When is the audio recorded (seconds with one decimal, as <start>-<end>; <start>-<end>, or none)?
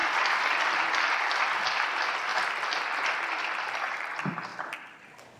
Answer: 0.0-5.4